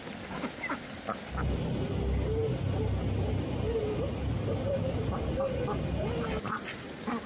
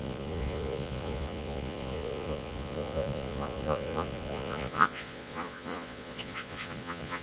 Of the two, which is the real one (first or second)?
first